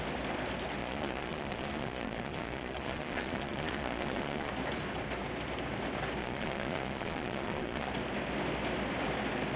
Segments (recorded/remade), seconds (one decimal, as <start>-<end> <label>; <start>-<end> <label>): 0.0-0.8 recorded; 0.8-4.5 remade; 4.5-6.2 recorded; 6.2-7.9 remade; 7.9-9.6 recorded